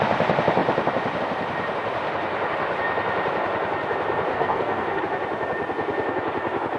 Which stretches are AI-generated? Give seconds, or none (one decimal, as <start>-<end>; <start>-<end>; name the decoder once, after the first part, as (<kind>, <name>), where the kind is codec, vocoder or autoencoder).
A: 4.3-5.0 (codec, SNAC)